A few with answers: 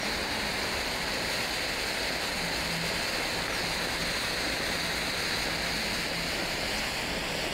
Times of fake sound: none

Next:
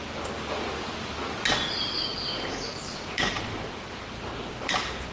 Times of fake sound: 3.5-4.6 (vocoder, BigVGAN v2)

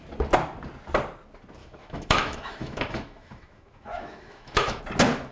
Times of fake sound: 1.6-4.8 (autoencoder, DAC-VAE)

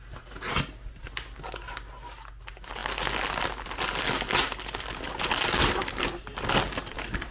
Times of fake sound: none

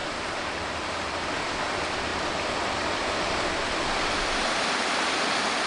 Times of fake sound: none

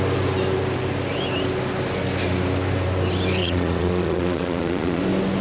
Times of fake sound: 3.4-5.0 (vocoder, Vocos)

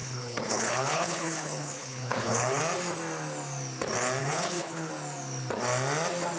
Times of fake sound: 0.0-2.6 (codec, HILCodec); 4.2-4.9